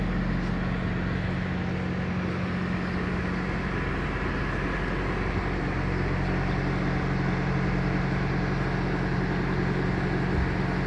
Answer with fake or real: real